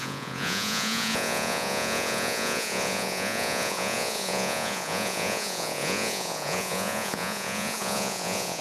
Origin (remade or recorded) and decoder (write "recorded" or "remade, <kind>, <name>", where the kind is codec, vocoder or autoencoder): remade, vocoder, Vocos